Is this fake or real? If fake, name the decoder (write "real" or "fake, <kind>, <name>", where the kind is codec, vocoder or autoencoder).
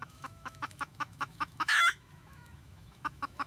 fake, autoencoder, DAC-VAE